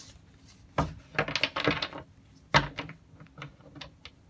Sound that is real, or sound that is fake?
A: real